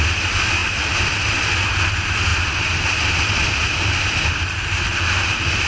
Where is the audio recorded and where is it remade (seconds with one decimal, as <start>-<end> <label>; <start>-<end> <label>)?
0.0-5.7 recorded